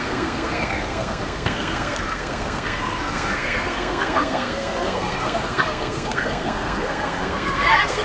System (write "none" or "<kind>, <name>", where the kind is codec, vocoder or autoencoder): codec, SNAC